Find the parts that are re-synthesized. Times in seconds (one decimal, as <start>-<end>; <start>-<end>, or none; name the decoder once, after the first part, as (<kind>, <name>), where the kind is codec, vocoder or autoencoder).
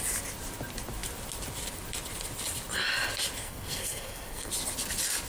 3.4-4.5 (codec, SNAC)